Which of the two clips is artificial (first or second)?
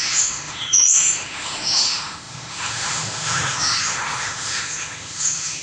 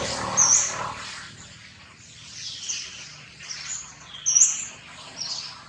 first